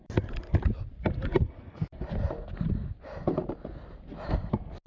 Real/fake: real